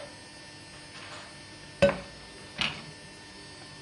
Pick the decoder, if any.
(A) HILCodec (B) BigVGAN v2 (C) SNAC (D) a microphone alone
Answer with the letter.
D